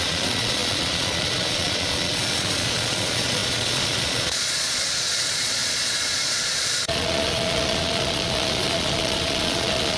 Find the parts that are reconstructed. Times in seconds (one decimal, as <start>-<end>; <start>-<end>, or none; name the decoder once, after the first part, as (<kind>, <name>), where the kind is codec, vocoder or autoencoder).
0.0-10.0 (vocoder, Vocos)